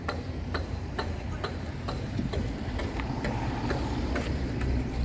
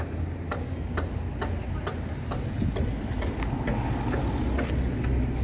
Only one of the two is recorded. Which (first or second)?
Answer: second